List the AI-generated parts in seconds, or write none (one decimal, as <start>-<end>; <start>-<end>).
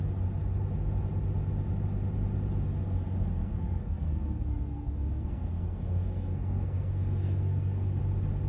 3.4-8.0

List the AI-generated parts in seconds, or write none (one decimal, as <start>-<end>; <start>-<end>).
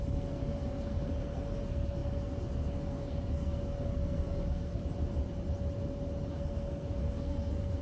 0.0-4.8; 6.3-7.8